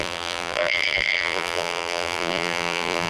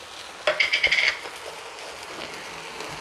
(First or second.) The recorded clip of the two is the second